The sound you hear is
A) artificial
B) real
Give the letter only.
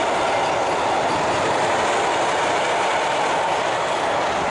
B